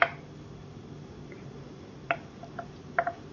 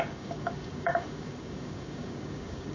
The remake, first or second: second